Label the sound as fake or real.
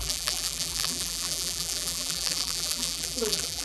fake